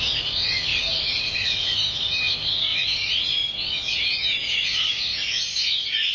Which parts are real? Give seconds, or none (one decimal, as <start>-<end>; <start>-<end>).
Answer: 0.0-0.7; 1.5-2.7; 3.5-6.1